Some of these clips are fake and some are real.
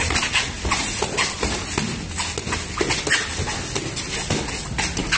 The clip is real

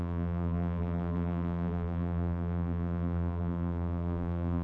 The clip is fake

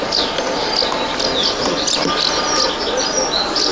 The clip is real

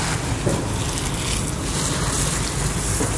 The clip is real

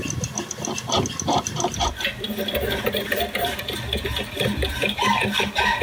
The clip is real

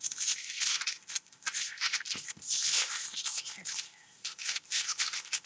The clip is fake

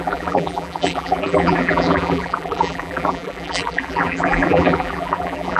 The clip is fake